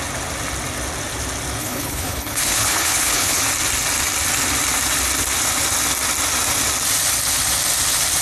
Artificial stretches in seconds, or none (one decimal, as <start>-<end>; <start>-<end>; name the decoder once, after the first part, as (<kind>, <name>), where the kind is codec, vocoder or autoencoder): 1.6-3.4 (codec, HILCodec)